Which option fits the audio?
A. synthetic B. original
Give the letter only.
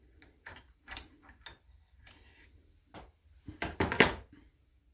B